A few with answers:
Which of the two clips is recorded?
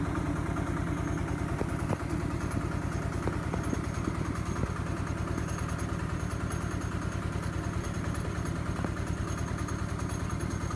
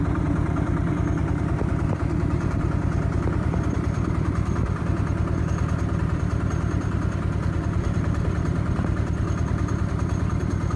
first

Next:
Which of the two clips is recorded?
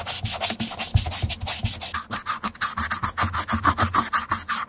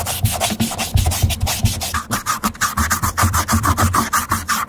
first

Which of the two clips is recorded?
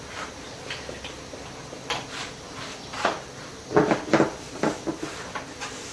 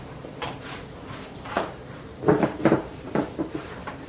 first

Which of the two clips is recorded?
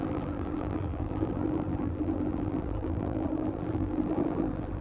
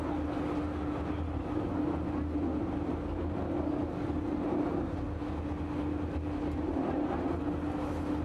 second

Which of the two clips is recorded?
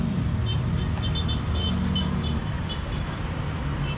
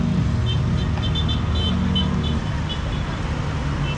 second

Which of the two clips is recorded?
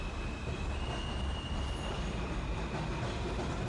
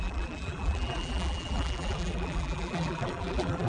first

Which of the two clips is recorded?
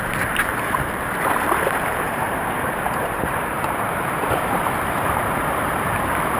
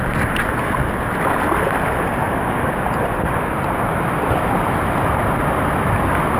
second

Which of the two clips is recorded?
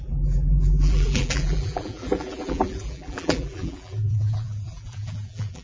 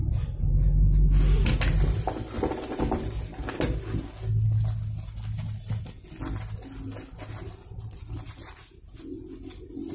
second